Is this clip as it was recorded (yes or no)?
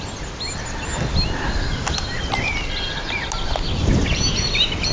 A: yes